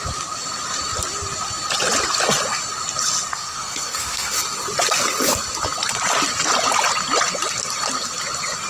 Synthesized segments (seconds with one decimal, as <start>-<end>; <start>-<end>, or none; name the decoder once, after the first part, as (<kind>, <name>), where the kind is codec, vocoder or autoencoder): 3.3-4.3 (codec, SNAC)